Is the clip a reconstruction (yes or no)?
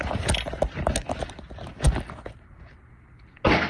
no